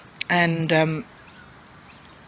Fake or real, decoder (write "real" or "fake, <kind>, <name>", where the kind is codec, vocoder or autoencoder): real